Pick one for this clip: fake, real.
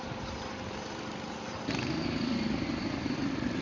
real